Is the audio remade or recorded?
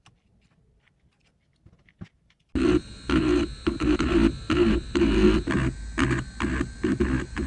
recorded